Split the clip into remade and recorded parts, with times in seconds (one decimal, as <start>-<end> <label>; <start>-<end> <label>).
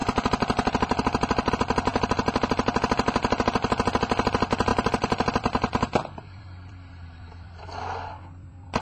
0.0-1.5 remade; 1.5-4.7 recorded; 4.7-8.8 remade